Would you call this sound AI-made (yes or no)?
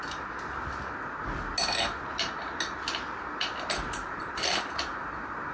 no